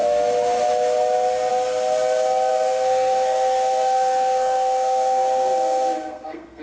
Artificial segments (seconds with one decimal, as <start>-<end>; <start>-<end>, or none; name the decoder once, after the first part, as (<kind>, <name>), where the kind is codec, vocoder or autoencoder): 2.5-6.6 (codec, SNAC)